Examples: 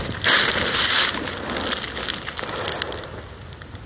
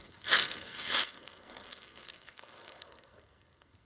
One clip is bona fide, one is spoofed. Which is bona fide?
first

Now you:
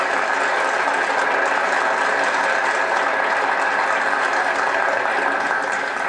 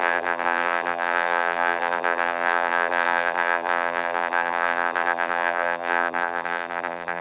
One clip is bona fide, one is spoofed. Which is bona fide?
first